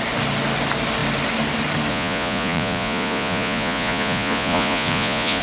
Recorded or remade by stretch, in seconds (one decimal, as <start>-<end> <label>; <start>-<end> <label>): 0.0-1.9 recorded; 1.9-5.4 remade